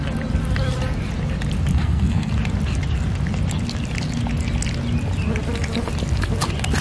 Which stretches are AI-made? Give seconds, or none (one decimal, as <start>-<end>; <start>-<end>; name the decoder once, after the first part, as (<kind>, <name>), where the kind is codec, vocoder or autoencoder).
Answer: 1.7-2.3 (codec, SNAC)